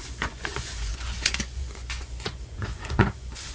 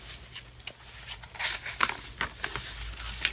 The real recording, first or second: second